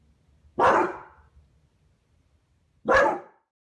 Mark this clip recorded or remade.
recorded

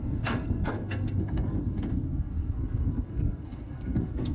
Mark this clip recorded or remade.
remade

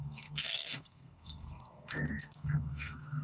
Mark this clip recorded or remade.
remade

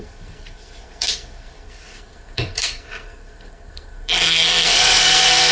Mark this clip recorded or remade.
remade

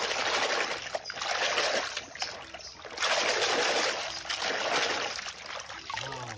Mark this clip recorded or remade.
recorded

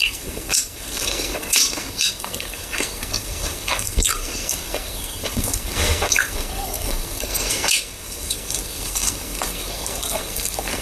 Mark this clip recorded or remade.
remade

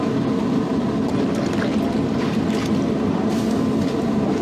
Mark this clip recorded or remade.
recorded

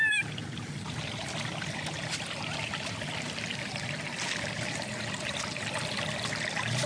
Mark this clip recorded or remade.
recorded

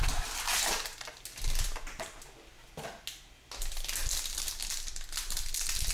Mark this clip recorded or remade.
recorded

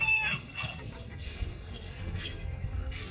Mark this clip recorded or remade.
remade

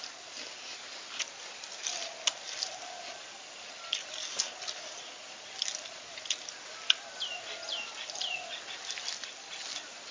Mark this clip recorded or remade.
recorded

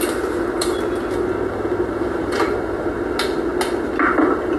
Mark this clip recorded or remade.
recorded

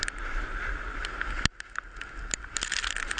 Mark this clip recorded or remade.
recorded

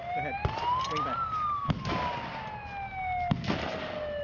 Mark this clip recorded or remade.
recorded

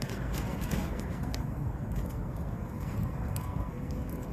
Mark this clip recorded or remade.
remade